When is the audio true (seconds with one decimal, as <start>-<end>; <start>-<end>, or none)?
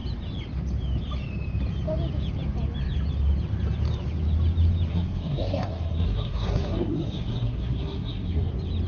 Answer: 0.0-4.9; 8.5-8.9